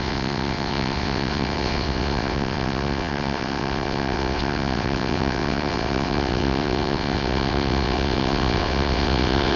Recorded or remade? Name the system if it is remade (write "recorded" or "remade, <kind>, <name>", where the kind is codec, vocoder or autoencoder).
remade, vocoder, WaveNeXt